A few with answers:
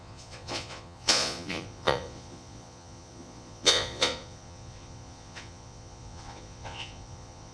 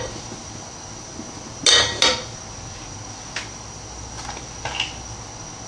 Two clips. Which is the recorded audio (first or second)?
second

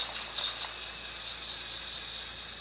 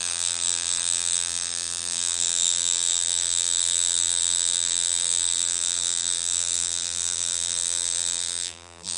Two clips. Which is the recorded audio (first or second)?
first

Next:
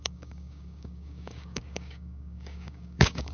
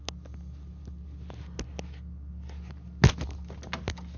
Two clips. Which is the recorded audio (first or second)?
second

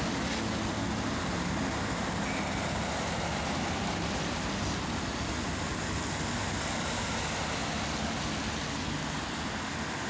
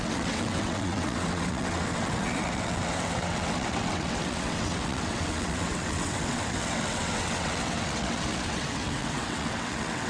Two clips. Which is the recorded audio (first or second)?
first